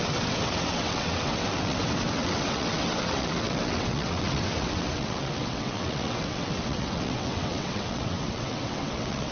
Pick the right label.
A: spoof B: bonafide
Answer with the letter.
A